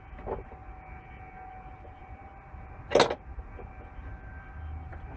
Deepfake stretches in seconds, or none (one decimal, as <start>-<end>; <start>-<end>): none